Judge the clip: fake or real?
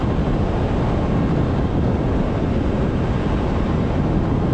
real